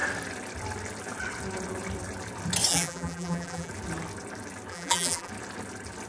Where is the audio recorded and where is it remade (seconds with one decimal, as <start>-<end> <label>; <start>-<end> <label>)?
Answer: 0.0-2.7 recorded; 2.7-3.7 remade; 3.7-4.7 recorded; 4.7-5.3 remade; 5.3-6.1 recorded